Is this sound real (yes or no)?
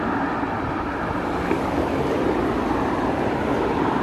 no